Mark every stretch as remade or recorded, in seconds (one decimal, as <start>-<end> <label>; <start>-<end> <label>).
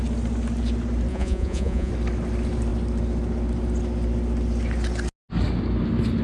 0.0-1.1 recorded; 1.1-1.9 remade; 1.9-6.2 recorded